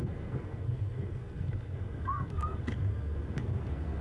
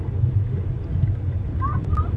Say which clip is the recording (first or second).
second